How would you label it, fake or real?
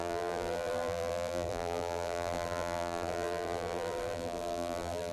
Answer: fake